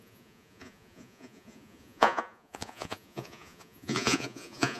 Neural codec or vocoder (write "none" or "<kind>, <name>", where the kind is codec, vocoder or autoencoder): vocoder, Vocos